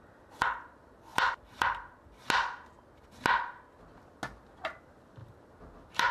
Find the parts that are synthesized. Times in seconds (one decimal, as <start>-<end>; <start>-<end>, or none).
none